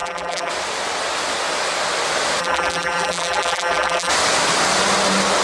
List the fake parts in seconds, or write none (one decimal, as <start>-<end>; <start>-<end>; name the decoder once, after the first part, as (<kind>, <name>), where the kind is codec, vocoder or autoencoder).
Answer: 0.0-0.5 (vocoder, BigVGAN v2); 2.4-4.1